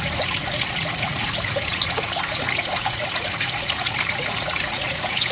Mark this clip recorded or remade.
remade